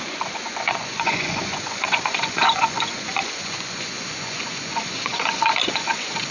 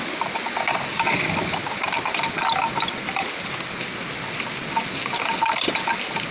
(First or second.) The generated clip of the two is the first